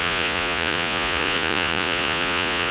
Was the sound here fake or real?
fake